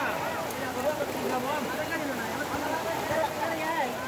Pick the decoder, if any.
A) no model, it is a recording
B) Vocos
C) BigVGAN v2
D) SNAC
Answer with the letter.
A